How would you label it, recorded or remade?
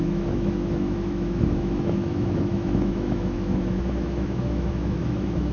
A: remade